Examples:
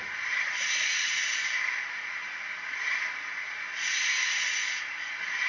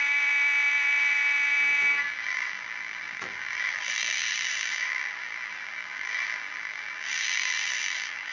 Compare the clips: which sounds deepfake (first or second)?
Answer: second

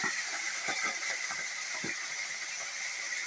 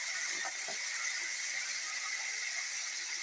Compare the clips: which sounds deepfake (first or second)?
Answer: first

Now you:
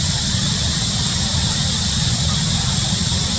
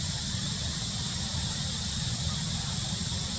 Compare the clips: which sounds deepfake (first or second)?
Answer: second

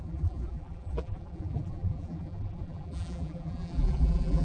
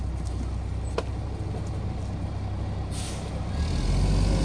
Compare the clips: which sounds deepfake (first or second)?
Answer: first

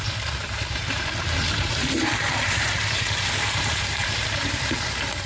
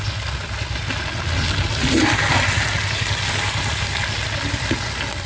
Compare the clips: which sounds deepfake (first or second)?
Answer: first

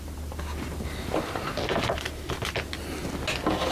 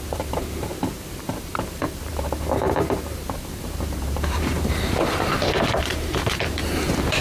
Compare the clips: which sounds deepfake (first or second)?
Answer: second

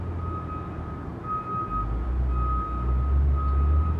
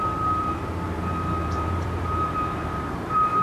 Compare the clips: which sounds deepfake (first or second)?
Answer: second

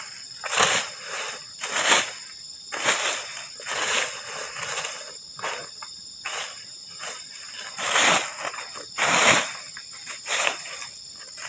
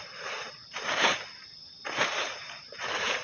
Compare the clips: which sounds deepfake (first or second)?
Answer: second